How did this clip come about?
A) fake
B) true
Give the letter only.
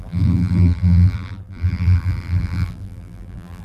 A